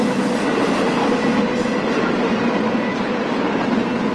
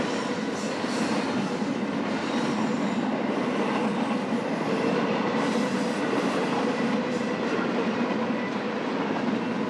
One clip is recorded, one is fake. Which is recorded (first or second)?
first